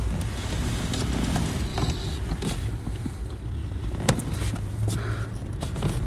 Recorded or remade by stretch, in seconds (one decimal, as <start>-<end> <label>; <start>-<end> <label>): 0.0-3.6 recorded; 3.6-4.7 remade; 4.7-6.1 recorded